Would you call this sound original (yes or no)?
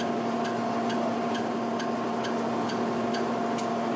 yes